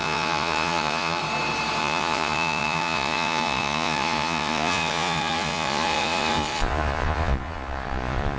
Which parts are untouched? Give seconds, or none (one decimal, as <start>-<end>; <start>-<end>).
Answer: 1.2-1.8